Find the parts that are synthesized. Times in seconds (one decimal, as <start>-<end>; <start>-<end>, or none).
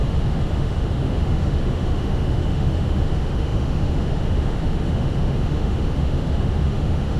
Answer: 0.0-7.2